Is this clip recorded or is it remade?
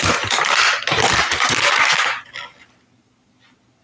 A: recorded